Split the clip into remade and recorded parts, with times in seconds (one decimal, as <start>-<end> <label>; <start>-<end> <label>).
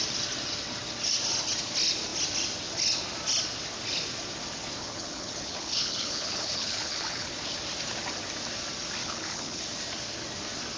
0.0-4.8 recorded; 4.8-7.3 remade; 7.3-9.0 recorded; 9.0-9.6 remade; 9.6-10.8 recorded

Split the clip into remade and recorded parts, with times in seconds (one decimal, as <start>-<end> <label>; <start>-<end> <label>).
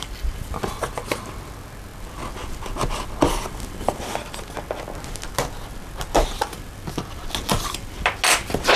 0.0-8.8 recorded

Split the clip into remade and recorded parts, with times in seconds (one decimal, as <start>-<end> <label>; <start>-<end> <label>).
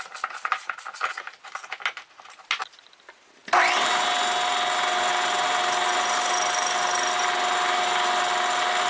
0.0-8.9 recorded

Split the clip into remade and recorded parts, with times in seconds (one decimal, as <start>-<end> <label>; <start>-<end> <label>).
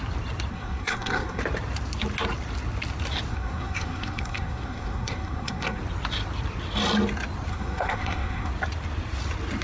0.0-0.5 recorded; 0.5-1.4 remade; 1.4-3.3 recorded; 3.3-5.8 remade; 5.8-7.5 recorded; 7.5-8.5 remade; 8.5-9.6 recorded